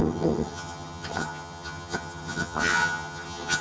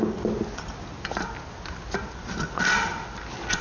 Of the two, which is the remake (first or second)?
first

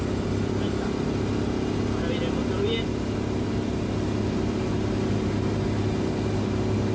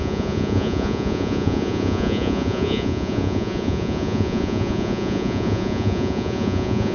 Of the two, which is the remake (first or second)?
second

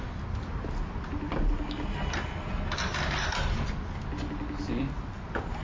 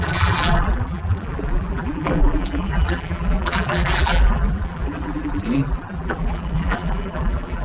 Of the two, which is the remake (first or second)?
second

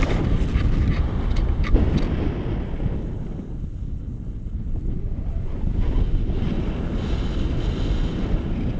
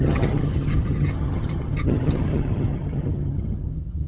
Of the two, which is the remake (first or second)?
second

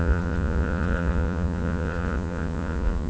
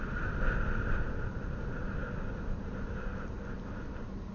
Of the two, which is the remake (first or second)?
first